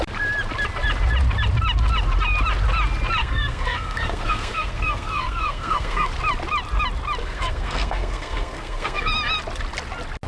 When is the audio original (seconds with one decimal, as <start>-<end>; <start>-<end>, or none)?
0.0-3.2; 6.1-7.2; 9.1-10.3